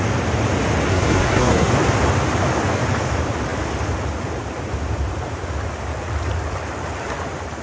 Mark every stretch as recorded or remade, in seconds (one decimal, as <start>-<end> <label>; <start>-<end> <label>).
0.0-0.9 recorded; 0.9-1.7 remade; 1.7-7.6 recorded